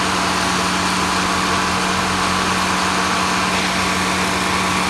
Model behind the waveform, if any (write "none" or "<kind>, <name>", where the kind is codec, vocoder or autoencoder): none